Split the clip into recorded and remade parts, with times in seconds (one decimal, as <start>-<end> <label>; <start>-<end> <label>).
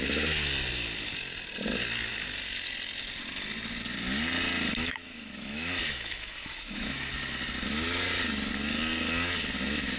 0.0-4.7 recorded; 4.7-7.1 remade; 7.1-10.0 recorded